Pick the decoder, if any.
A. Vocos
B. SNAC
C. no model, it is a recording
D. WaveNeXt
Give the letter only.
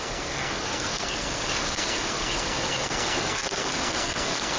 B